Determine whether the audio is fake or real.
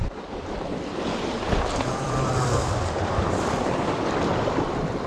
fake